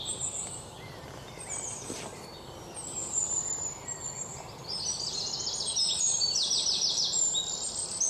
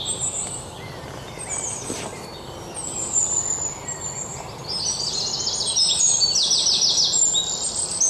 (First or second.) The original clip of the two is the second